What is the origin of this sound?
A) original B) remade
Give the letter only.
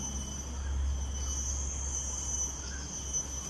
A